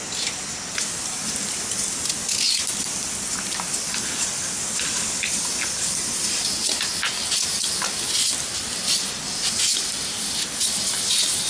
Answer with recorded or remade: recorded